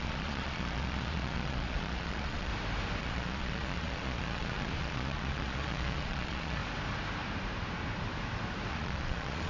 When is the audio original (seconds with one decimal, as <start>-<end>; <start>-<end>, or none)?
2.5-3.0; 6.6-8.7